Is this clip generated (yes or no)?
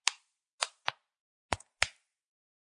no